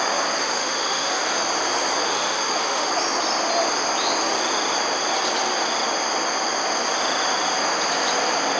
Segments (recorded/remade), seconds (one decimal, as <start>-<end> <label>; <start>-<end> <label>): 0.0-0.4 recorded; 0.4-1.2 remade; 1.2-2.1 recorded; 2.1-2.9 remade; 2.9-8.6 recorded